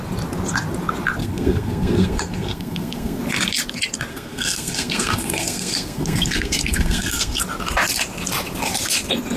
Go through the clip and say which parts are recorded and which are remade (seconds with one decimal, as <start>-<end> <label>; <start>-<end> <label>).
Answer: 0.0-1.2 recorded; 1.2-3.2 remade; 3.2-4.1 recorded; 4.1-7.4 remade; 7.4-9.4 recorded